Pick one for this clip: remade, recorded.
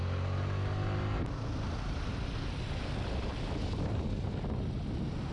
recorded